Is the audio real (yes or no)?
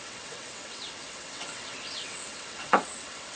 no